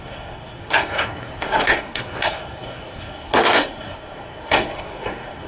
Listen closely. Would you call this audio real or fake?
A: fake